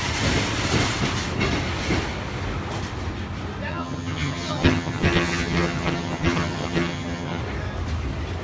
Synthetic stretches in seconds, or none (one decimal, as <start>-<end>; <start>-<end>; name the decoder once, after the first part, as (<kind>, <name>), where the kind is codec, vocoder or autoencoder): 3.7-7.4 (vocoder, HiFi-GAN)